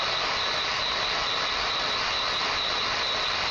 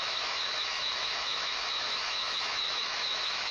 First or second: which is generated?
second